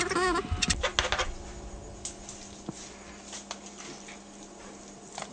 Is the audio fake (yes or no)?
no